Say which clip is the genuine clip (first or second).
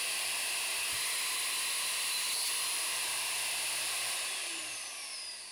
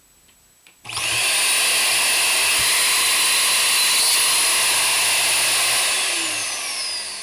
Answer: second